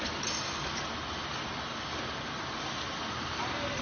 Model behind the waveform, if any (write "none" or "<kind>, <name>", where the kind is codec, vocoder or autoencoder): none